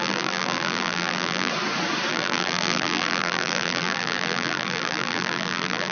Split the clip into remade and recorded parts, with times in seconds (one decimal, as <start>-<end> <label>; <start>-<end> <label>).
0.0-1.5 remade; 1.5-2.1 recorded; 2.1-5.9 remade